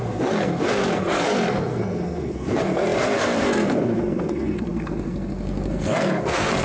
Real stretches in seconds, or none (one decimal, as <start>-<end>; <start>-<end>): none